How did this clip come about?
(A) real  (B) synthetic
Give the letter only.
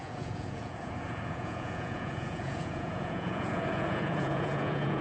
B